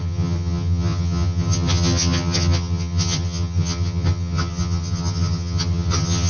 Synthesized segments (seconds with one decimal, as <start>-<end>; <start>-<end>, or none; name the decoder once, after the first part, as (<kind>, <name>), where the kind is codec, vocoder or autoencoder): 0.0-6.3 (vocoder, HiFi-GAN)